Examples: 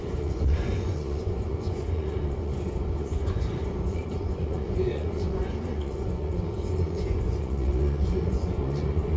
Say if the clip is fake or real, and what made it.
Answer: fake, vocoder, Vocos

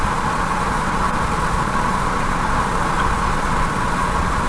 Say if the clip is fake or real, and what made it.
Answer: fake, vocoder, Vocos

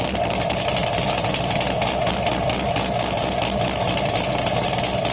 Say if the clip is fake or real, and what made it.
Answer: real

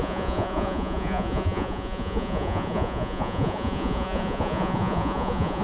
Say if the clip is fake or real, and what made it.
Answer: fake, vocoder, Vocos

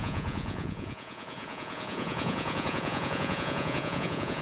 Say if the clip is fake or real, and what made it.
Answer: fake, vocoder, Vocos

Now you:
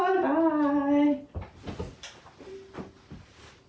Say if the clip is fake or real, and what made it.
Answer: real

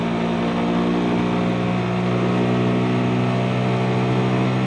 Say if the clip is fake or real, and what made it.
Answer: real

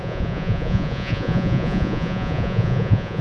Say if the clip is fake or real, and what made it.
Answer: fake, vocoder, Vocos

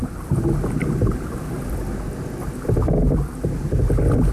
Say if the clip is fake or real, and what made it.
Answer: real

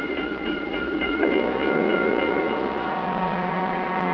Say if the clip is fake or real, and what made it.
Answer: fake, vocoder, Vocos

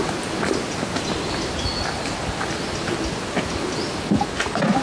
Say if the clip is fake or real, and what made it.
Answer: real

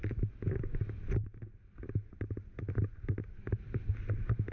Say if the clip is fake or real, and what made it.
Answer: real